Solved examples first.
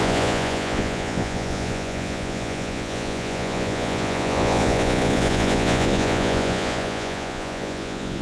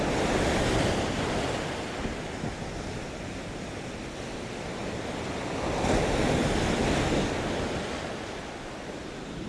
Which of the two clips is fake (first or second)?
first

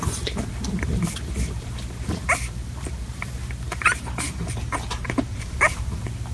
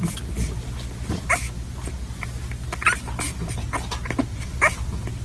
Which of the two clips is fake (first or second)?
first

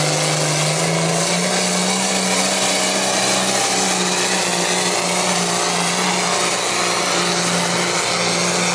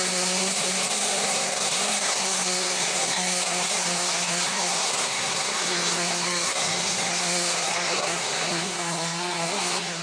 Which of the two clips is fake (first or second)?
second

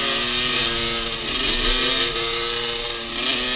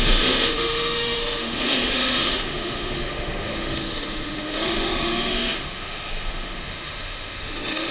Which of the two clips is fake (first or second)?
second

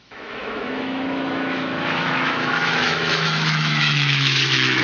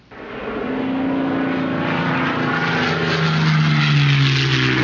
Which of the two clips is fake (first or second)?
first